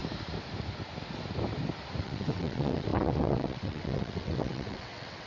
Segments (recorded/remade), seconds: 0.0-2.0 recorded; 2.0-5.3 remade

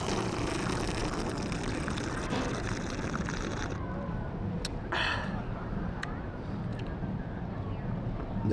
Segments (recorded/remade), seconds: 0.0-8.5 recorded

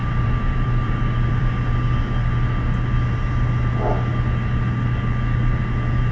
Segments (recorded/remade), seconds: 0.0-1.5 remade; 1.5-6.1 recorded

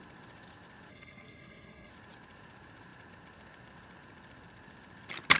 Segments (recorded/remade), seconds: 0.0-0.9 recorded; 0.9-1.9 remade; 1.9-5.4 recorded

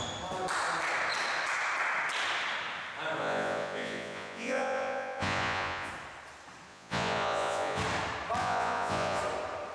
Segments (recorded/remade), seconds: 0.0-3.2 recorded; 3.2-5.9 remade; 5.9-6.7 recorded; 6.7-7.8 remade; 7.8-8.4 recorded; 8.4-9.2 remade; 9.2-9.7 recorded